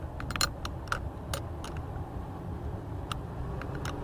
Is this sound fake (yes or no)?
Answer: no